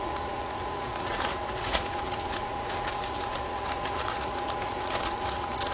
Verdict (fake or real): fake